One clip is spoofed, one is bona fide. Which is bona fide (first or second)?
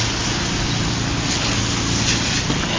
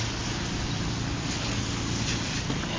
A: first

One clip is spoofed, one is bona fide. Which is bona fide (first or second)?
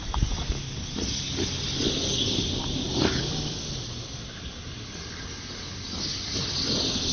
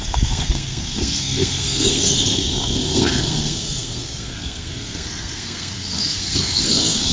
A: first